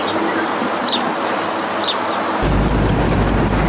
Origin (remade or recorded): recorded